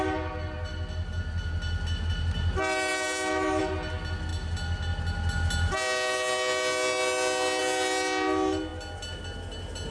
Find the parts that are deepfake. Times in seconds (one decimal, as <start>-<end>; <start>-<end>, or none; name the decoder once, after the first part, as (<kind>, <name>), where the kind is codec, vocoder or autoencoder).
none